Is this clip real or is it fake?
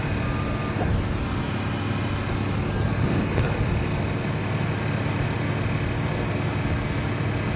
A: real